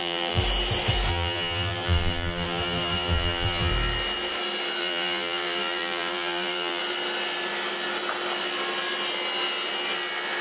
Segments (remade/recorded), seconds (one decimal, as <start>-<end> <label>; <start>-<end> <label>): 0.0-0.4 remade; 0.4-1.1 recorded; 1.1-3.7 remade; 3.7-4.8 recorded; 4.8-6.8 remade; 6.8-10.4 recorded